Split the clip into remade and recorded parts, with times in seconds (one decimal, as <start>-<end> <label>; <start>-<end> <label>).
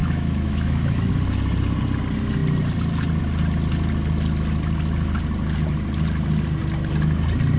0.0-1.1 remade; 1.1-7.6 recorded